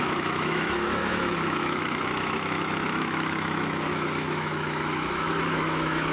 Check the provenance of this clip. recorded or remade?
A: remade